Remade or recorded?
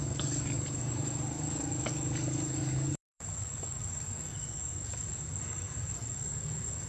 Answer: remade